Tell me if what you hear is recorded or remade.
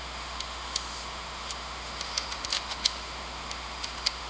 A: remade